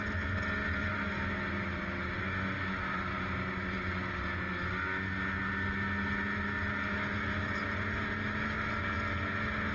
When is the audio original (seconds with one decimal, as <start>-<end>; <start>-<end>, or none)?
0.0-9.7